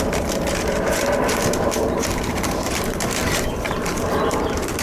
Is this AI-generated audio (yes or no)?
yes